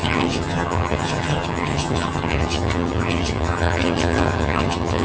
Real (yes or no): no